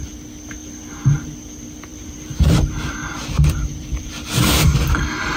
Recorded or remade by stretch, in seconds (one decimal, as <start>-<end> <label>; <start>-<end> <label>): 0.0-0.6 recorded; 0.6-1.3 remade; 1.3-1.9 recorded; 1.9-5.4 remade